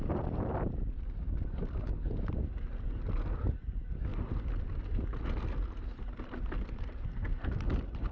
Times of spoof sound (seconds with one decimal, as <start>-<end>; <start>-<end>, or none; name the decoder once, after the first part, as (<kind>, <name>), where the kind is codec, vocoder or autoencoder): none

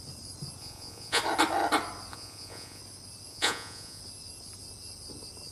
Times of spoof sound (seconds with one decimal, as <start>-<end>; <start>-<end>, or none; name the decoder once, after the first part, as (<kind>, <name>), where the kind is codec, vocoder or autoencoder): 0.6-1.2 (vocoder, Vocos); 2.1-2.8; 3.3-4.0